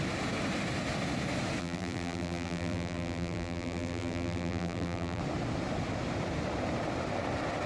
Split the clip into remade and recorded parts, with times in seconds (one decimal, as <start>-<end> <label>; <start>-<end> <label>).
0.0-1.6 recorded; 1.6-5.2 remade; 5.2-7.7 recorded